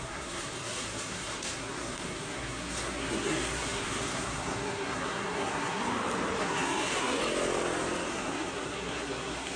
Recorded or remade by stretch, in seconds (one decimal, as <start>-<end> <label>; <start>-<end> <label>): 0.0-5.8 remade; 5.8-6.4 recorded; 6.4-7.2 remade; 7.2-8.1 recorded; 8.1-9.6 remade